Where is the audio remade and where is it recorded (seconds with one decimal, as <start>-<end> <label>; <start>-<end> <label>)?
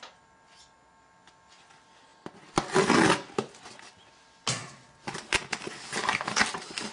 0.0-6.9 recorded